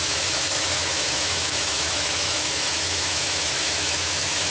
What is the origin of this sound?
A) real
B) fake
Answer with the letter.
B